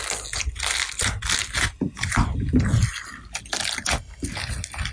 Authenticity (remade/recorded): recorded